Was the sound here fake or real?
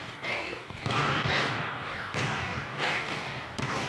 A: fake